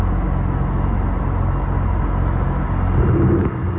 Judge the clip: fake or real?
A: real